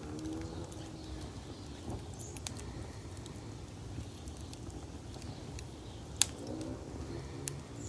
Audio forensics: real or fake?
real